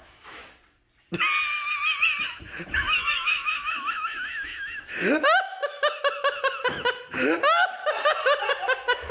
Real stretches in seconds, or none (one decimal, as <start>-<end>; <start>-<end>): 0.4-2.2; 7.8-8.5